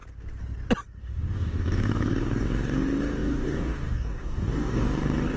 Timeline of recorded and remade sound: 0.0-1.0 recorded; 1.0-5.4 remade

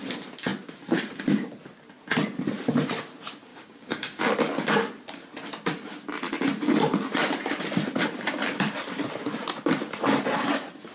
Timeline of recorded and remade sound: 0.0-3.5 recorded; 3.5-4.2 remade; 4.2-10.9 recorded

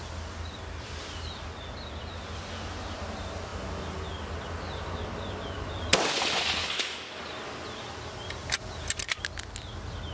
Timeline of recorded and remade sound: 0.0-6.6 recorded; 6.6-7.2 remade; 7.2-10.1 recorded

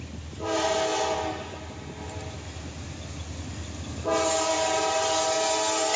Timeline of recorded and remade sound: 0.0-6.0 recorded

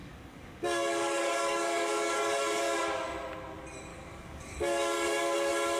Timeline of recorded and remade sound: 0.0-2.8 remade; 2.8-3.9 recorded; 3.9-5.8 remade

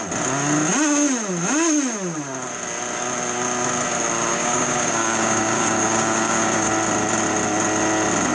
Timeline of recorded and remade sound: 0.0-4.3 recorded; 4.3-6.7 remade; 6.7-8.3 recorded